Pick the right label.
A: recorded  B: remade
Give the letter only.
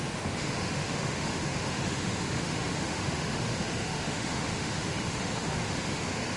B